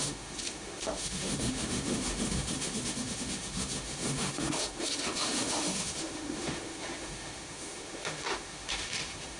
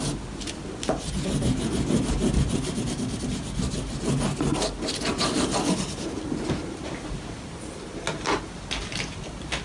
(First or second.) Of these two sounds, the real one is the second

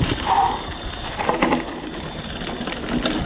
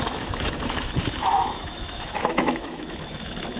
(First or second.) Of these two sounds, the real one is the first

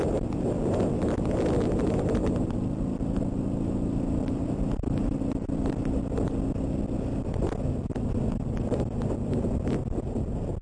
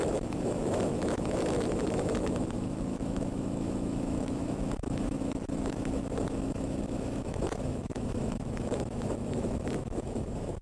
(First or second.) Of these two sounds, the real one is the first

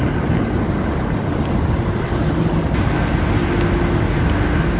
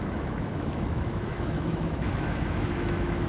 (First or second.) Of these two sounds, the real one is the first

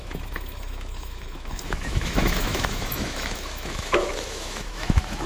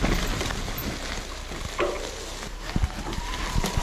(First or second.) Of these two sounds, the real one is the second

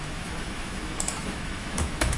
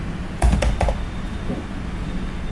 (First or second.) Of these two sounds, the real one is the second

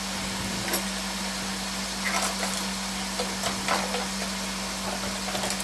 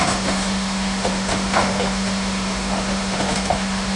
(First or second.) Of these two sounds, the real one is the first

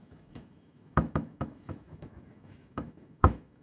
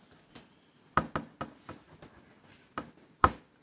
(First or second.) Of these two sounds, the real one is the second